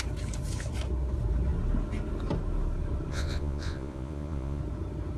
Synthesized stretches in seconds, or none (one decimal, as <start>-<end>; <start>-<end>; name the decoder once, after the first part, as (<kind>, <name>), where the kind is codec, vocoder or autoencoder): 3.1-4.6 (vocoder, Vocos)